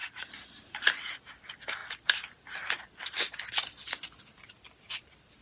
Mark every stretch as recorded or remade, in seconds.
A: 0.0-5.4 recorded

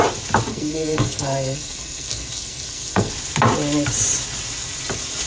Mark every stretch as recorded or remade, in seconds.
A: 0.0-0.5 recorded; 0.5-3.1 remade; 3.1-5.3 recorded

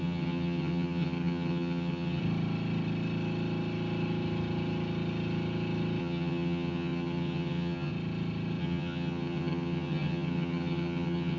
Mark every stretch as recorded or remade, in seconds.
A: 0.0-2.2 remade; 2.2-6.0 recorded; 6.0-7.9 remade; 7.9-8.6 recorded; 8.6-11.4 remade

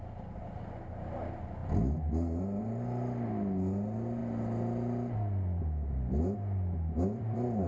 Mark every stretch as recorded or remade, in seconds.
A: 0.0-7.7 recorded

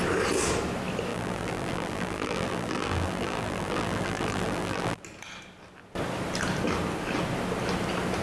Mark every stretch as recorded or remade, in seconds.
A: 0.0-1.1 recorded; 1.1-5.0 remade; 5.0-8.2 recorded

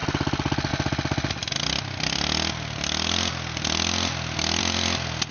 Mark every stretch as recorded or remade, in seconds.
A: 0.0-5.3 recorded

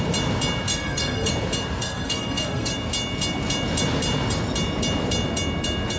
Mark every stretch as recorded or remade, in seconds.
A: 0.0-0.7 recorded; 0.7-1.3 remade; 1.3-1.8 recorded; 1.8-2.7 remade; 2.7-6.0 recorded